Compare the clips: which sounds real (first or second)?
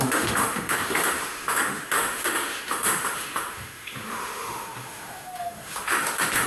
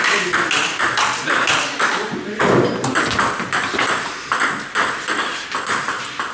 second